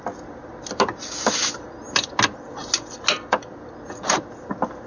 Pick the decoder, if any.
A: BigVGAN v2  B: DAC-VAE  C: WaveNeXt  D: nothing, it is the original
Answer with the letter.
D